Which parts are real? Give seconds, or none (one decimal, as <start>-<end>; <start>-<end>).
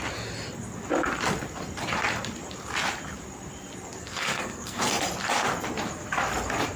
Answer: 0.0-4.0; 4.8-6.8